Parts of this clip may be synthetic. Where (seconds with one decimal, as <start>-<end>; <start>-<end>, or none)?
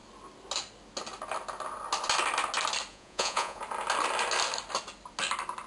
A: 2.9-3.6